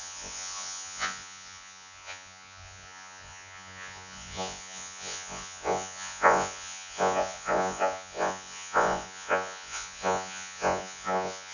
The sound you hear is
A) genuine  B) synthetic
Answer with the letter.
B